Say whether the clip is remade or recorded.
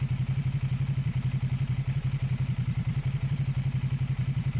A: recorded